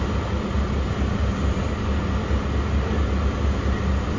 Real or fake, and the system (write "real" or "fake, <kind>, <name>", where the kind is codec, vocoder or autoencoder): real